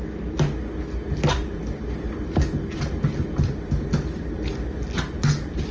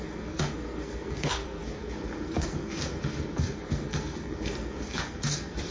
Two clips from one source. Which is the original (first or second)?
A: first